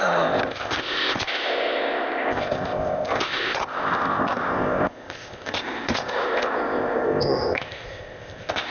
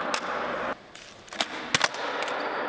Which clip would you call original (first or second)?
second